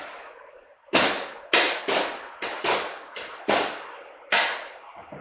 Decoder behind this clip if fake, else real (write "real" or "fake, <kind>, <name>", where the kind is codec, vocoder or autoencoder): real